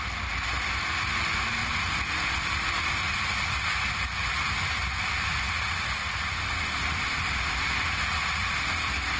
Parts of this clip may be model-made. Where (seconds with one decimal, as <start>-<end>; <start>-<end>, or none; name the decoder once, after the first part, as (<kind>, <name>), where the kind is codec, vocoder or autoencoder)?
none